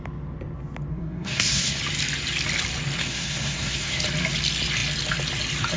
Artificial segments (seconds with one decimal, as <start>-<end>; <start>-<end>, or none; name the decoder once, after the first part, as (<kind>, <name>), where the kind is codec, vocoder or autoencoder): 0.9-1.8 (codec, SNAC); 3.0-4.0